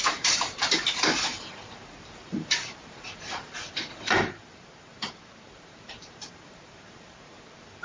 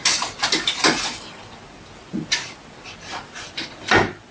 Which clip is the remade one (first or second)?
first